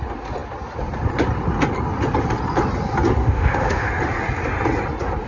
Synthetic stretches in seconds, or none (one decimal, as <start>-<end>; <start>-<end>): 3.2-3.9